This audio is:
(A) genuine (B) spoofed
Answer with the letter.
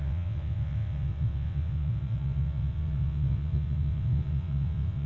B